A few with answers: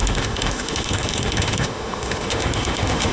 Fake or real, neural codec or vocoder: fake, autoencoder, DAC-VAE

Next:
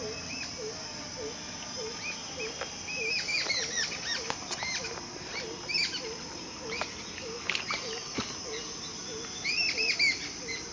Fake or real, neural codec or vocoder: real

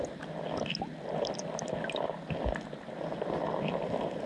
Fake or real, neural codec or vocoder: real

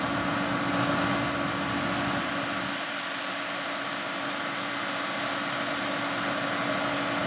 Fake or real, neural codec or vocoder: real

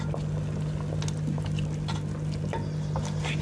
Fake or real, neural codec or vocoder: real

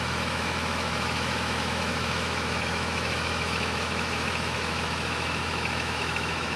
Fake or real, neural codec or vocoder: fake, autoencoder, DAC-VAE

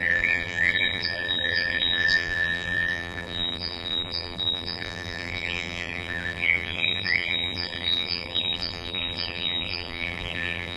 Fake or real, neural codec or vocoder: fake, vocoder, BigVGAN v2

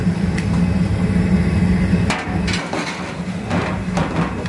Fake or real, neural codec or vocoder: real